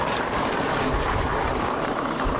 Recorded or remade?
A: remade